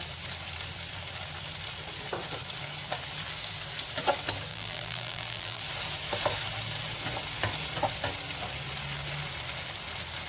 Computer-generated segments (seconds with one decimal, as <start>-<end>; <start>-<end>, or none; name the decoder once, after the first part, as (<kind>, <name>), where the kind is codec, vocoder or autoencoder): 4.5-5.6 (vocoder, BigVGAN v2)